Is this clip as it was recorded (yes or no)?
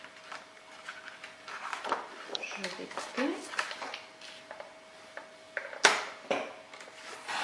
yes